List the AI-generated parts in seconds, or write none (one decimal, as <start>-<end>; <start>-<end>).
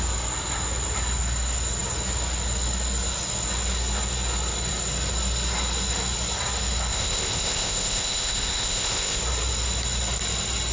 6.9-9.2